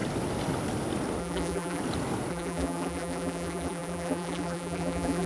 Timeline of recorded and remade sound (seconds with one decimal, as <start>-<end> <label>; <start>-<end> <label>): 0.0-1.2 recorded; 1.2-1.8 remade; 1.8-2.3 recorded; 2.3-5.3 remade